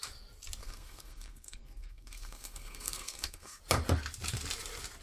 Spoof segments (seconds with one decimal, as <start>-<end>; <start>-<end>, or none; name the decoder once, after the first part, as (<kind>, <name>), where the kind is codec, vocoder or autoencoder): 0.6-3.6 (codec, SNAC)